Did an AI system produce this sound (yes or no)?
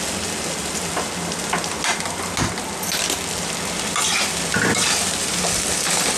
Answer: no